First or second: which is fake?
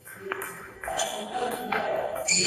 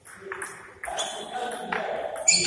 first